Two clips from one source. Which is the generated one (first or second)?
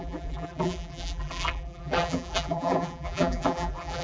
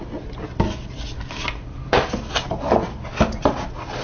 first